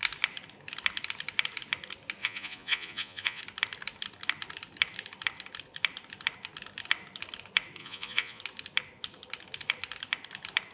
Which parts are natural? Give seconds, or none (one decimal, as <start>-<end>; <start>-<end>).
0.0-2.2; 3.4-7.8; 8.4-10.7